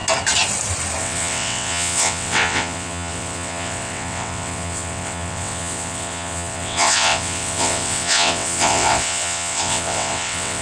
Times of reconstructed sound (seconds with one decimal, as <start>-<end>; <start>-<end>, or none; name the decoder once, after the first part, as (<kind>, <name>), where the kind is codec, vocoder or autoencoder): 1.0-10.6 (vocoder, WaveNeXt)